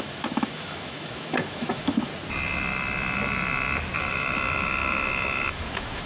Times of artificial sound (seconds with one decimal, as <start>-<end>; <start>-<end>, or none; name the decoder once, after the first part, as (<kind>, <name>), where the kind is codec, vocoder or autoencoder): 0.0-2.1 (autoencoder, DAC-VAE); 4.0-6.1